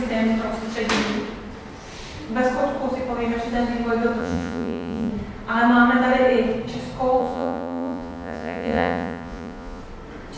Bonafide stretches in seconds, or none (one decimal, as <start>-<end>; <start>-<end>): 0.0-4.2; 5.1-7.2; 9.8-10.4